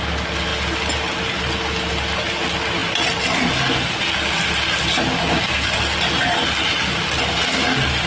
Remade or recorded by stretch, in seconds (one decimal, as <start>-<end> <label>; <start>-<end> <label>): 0.0-8.1 recorded